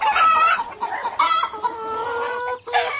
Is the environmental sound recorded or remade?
recorded